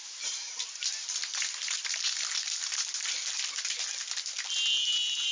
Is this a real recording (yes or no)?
yes